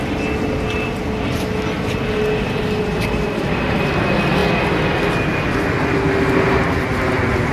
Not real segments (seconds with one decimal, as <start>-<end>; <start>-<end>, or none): none

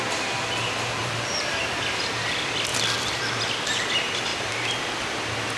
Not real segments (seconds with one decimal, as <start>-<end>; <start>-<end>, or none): 1.0-2.3

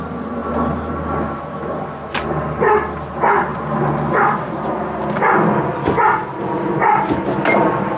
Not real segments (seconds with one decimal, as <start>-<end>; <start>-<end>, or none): none

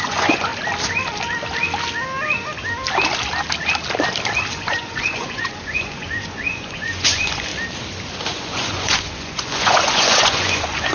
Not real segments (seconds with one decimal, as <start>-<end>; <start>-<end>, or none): 0.0-0.5; 4.5-7.5; 8.2-10.9

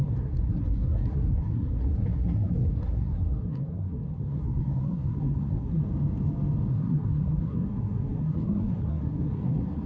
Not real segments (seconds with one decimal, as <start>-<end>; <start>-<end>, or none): 0.0-5.8; 6.7-9.9